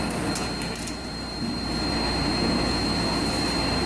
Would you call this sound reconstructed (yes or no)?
no